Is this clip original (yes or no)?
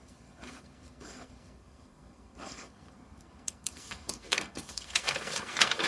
no